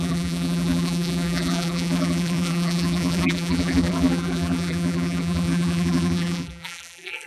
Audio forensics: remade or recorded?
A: remade